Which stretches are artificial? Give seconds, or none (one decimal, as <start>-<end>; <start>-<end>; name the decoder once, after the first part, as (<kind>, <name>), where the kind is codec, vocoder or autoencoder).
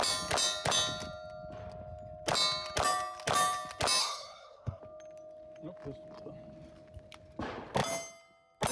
4.0-4.8 (codec, SNAC)